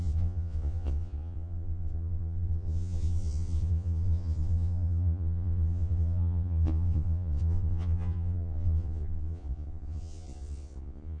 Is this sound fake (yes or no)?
yes